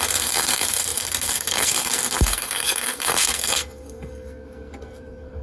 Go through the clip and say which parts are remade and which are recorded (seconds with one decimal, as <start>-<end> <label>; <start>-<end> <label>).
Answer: 0.0-5.4 remade